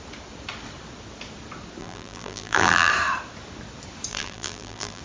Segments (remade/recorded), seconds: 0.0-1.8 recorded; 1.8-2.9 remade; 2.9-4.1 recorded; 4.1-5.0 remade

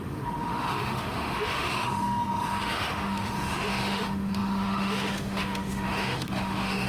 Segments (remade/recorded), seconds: 0.0-6.9 remade

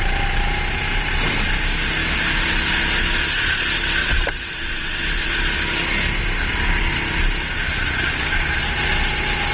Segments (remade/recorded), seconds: 0.0-4.0 recorded; 4.0-5.3 remade; 5.3-9.5 recorded

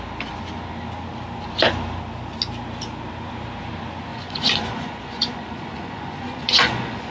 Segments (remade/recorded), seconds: 0.0-4.1 recorded; 4.1-7.1 remade